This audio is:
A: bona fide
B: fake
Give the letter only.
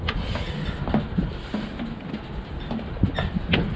A